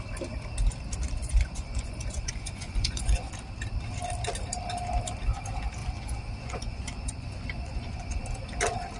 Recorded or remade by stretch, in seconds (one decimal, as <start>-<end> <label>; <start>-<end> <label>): 0.0-1.2 recorded; 1.2-3.3 remade; 3.3-5.8 recorded; 5.8-8.2 remade; 8.2-9.0 recorded